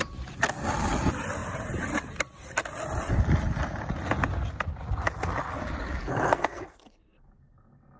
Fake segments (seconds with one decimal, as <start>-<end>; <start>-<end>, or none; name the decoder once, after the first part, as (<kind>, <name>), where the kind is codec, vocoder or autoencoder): 6.0-7.3 (codec, SNAC)

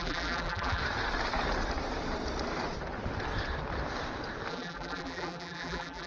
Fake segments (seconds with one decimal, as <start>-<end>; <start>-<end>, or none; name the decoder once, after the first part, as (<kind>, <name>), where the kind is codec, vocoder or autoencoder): 0.0-0.8 (vocoder, BigVGAN v2); 4.5-6.1

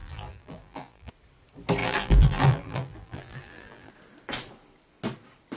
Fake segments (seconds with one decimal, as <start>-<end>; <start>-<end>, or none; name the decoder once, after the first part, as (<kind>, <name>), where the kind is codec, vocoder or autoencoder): 0.0-1.1 (vocoder, BigVGAN v2); 1.8-3.9

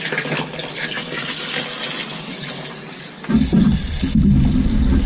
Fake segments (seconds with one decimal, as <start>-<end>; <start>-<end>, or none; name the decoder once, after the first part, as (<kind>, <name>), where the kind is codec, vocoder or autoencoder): none